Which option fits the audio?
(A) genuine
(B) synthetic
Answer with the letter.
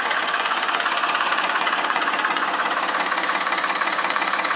B